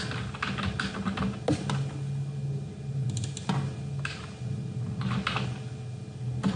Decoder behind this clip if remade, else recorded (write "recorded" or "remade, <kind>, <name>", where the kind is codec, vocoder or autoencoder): recorded